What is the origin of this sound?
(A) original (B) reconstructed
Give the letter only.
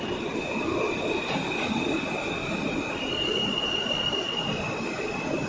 B